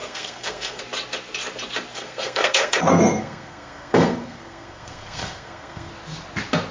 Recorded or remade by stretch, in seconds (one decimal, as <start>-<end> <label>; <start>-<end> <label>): 0.0-0.8 remade; 0.8-1.9 recorded; 1.9-5.9 remade; 5.9-6.7 recorded